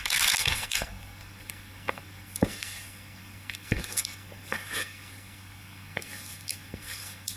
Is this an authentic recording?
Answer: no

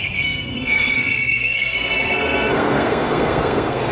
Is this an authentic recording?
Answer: no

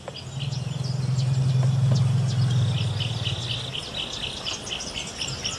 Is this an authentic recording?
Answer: yes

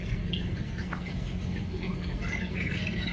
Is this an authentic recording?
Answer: no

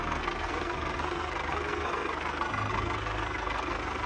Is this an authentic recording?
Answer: no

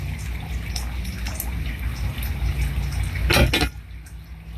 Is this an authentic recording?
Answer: yes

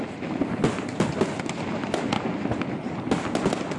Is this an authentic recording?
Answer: yes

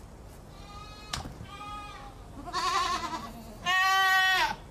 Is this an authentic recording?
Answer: yes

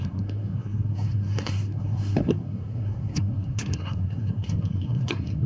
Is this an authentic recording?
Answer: no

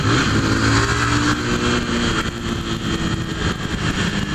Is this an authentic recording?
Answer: yes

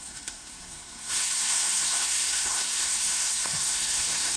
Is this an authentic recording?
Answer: no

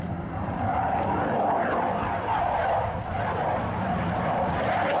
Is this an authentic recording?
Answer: yes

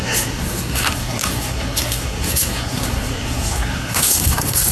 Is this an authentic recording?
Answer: no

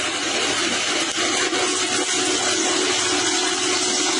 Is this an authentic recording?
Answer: yes